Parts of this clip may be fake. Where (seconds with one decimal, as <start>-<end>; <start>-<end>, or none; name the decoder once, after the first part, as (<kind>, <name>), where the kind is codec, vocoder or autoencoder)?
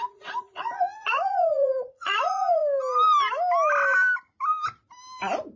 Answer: 0.0-2.6 (vocoder, Vocos)